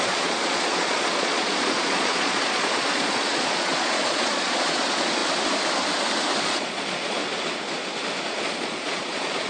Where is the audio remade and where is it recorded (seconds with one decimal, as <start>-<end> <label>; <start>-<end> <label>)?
0.0-5.2 remade; 5.2-6.4 recorded; 6.4-7.2 remade; 7.2-8.4 recorded; 8.4-9.5 remade